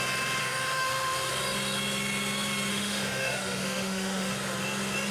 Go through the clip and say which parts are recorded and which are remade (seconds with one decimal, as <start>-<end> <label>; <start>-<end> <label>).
0.0-0.4 recorded; 0.4-1.3 remade; 1.3-2.7 recorded; 2.7-4.3 remade; 4.3-5.1 recorded